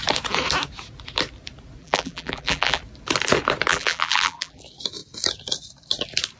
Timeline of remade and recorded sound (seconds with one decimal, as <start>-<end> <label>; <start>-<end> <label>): 0.0-1.8 recorded; 1.8-2.8 remade; 2.8-3.7 recorded; 3.7-4.6 remade; 4.6-6.4 recorded